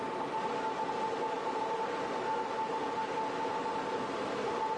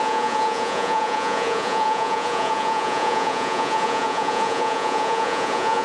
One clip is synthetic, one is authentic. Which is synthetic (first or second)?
second